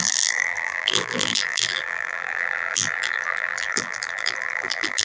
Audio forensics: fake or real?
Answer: fake